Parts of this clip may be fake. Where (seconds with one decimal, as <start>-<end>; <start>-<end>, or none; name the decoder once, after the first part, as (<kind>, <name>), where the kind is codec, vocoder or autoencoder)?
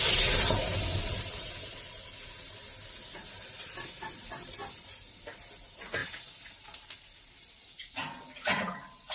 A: none